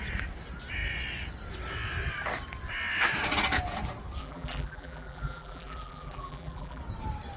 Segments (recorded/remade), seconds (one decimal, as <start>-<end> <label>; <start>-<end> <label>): 0.0-4.2 recorded; 4.2-6.8 remade; 6.8-7.4 recorded